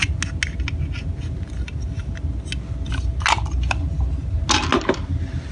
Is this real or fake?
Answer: real